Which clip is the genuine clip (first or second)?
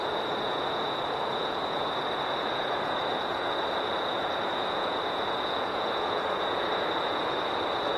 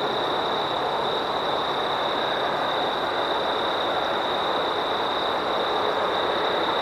second